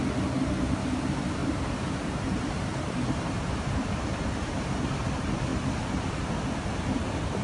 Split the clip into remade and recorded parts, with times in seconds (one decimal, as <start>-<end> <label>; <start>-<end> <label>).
0.0-1.4 recorded; 1.4-5.1 remade; 5.1-7.4 recorded